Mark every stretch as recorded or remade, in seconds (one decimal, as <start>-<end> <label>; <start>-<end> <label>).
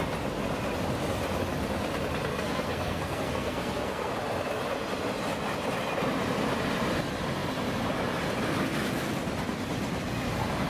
0.0-2.3 recorded; 2.3-4.1 remade; 4.1-10.7 recorded